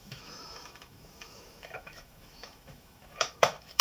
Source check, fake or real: fake